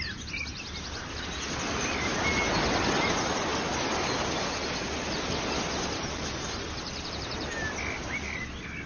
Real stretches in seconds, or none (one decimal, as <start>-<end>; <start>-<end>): 0.0-8.9